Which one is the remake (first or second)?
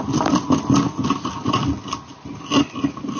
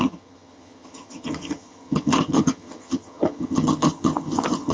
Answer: second